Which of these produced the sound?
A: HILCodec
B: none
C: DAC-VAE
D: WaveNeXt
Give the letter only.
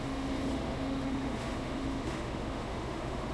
C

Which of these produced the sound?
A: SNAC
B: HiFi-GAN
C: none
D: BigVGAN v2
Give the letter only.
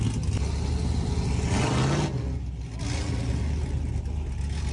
C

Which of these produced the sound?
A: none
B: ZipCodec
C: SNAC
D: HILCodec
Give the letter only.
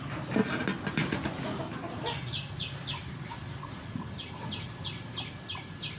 A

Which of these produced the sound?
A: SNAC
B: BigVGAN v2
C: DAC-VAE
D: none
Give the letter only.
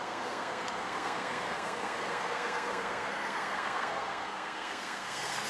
A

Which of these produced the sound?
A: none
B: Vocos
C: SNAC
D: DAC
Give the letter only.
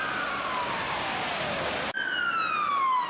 A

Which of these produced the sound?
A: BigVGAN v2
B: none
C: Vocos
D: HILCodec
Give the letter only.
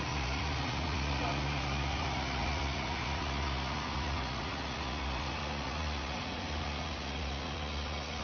C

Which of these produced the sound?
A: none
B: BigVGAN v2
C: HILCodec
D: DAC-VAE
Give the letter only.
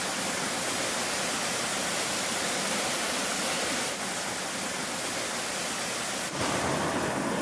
A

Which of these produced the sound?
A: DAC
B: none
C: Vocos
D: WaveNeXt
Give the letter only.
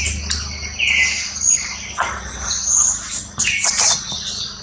B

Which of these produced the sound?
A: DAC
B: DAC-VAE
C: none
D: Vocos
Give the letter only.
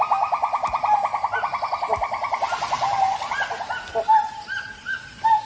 C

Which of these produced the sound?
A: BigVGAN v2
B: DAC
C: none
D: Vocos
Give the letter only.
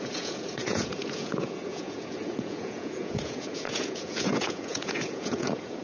D